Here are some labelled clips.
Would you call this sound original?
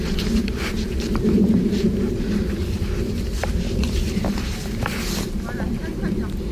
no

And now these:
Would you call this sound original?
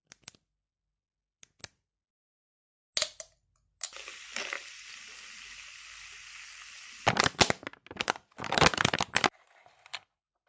yes